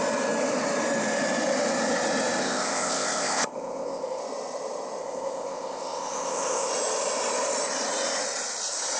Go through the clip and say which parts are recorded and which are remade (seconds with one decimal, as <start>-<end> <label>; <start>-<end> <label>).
0.0-2.4 recorded; 2.4-4.2 remade; 4.2-5.0 recorded; 5.0-6.7 remade; 6.7-9.0 recorded